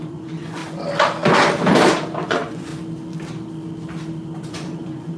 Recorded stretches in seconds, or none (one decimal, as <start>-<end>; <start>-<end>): 0.6-2.2; 2.7-4.5